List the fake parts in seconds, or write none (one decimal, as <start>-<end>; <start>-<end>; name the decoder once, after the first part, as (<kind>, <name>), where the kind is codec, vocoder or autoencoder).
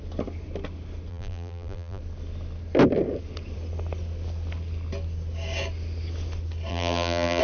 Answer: 1.1-2.0 (vocoder, BigVGAN v2); 6.7-7.4